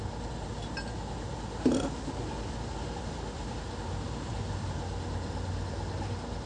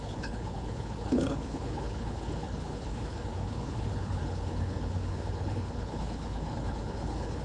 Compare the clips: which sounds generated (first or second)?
second